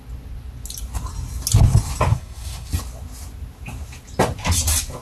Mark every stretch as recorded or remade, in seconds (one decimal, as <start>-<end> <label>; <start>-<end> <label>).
0.0-2.1 recorded; 2.1-2.7 remade; 2.7-5.0 recorded